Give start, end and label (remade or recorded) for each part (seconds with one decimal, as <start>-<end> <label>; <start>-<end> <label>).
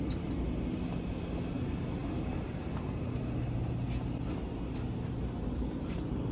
0.0-6.3 recorded